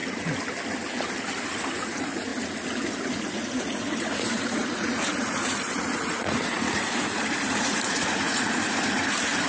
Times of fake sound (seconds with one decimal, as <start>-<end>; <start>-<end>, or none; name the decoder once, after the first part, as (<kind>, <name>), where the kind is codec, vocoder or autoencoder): 1.7-2.3 (vocoder, Vocos); 3.0-9.5